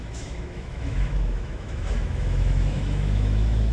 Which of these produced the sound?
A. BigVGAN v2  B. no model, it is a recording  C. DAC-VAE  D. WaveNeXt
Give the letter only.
C